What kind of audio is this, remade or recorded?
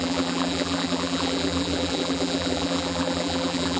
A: remade